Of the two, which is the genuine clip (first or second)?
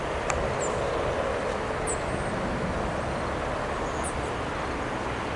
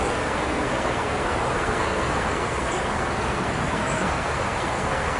first